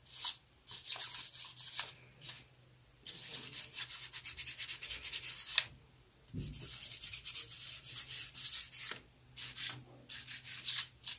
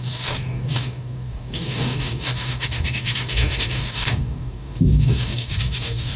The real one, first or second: first